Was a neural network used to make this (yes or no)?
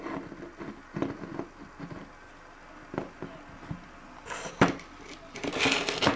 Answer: no